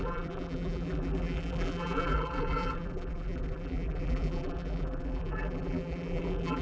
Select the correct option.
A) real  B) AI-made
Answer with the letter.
B